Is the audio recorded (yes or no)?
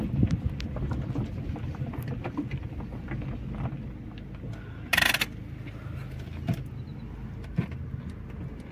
yes